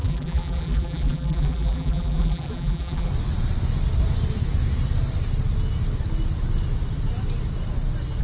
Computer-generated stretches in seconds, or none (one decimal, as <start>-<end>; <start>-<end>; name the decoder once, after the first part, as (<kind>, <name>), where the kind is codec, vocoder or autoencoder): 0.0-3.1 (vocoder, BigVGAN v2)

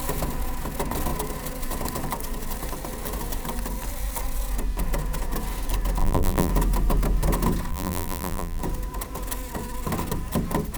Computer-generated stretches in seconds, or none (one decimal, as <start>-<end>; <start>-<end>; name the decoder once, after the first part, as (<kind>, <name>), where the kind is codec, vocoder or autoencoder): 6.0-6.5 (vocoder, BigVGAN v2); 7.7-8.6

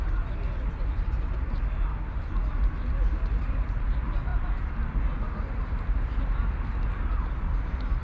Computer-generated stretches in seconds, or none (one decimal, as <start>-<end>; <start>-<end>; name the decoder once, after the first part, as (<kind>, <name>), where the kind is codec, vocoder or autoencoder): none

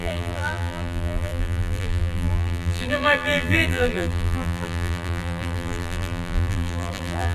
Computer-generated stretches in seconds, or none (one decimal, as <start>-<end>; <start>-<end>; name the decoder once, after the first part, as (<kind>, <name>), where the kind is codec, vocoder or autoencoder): 0.0-7.3 (vocoder, BigVGAN v2)